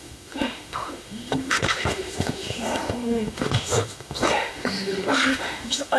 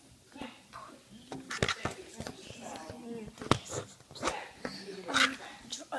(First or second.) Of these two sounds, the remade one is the first